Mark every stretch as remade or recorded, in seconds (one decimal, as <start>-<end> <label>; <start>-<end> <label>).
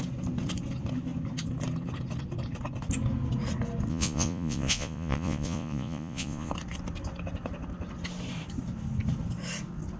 0.0-3.9 recorded; 3.9-6.5 remade; 6.5-10.0 recorded